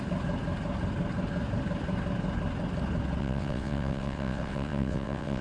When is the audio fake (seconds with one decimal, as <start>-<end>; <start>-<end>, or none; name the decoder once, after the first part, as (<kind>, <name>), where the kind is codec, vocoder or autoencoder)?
3.2-5.4 (vocoder, WaveNeXt)